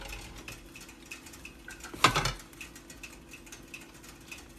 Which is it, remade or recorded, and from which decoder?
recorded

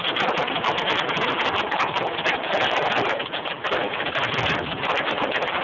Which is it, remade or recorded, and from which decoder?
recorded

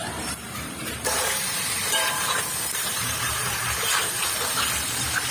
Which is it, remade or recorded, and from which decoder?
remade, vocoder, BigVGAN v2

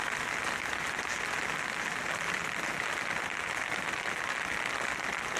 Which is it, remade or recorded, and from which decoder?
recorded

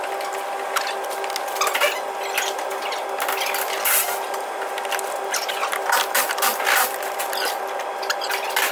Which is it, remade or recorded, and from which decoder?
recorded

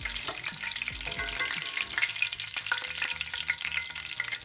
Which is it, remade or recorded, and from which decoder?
recorded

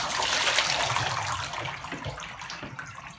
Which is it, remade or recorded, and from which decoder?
recorded